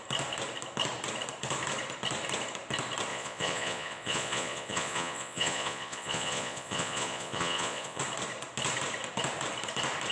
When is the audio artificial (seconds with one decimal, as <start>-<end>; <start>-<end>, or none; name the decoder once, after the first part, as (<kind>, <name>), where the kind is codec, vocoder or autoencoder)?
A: 3.1-8.0 (vocoder, Vocos)